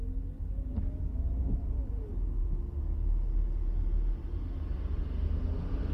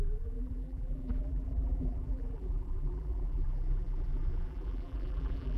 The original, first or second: first